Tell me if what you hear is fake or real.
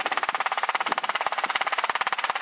real